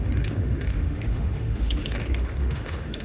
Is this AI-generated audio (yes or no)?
yes